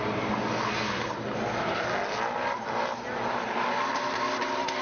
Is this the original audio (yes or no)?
yes